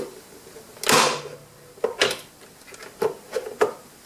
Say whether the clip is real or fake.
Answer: real